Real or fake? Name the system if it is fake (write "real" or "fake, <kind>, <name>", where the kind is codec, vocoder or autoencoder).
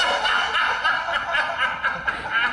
real